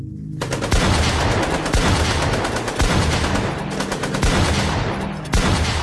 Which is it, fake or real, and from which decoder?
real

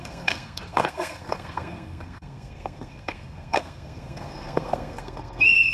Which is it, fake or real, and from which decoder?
fake, codec, SNAC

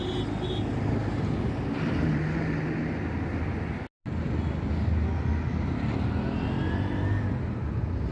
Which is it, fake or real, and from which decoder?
real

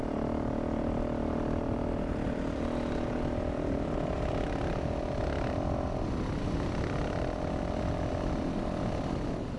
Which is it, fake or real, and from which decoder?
real